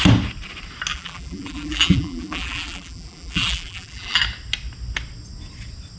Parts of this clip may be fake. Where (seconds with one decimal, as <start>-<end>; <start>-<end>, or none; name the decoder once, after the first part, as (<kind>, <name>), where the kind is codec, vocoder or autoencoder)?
0.9-4.2 (vocoder, BigVGAN v2)